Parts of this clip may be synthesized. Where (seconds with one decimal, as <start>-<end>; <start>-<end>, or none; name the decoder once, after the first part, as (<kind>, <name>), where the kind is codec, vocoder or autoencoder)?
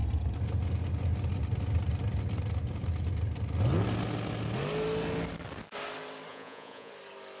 6.3-6.9 (vocoder, Vocos)